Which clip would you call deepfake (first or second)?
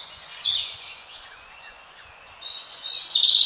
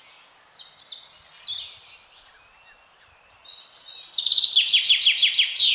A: first